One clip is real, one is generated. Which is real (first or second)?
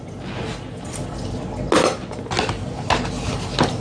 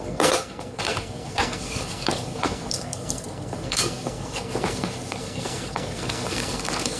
first